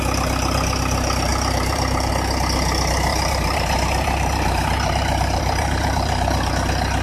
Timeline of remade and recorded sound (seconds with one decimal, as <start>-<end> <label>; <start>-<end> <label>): 0.0-1.3 recorded; 1.3-2.1 remade; 2.1-3.1 recorded; 3.1-6.5 remade; 6.5-7.0 recorded